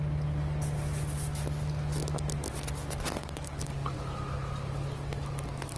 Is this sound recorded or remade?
recorded